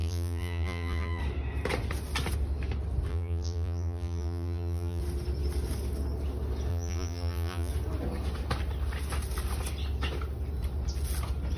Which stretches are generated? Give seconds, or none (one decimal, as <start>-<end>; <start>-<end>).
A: 0.0-1.2; 3.1-5.0; 6.7-7.7